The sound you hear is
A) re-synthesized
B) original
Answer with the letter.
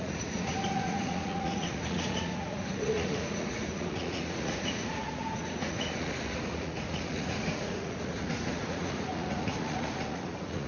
A